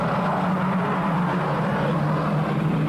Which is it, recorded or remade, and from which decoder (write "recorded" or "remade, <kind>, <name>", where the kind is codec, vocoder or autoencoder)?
recorded